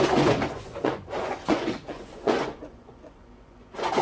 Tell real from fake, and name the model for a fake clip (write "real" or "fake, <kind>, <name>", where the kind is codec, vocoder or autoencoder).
fake, vocoder, Vocos